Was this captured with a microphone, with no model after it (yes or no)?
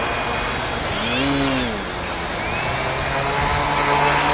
yes